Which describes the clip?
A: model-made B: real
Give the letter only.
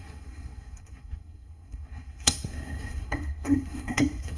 A